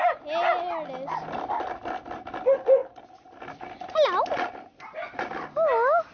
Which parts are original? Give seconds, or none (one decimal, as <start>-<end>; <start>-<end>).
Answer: 0.0-6.1